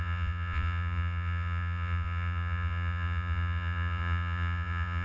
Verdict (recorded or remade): remade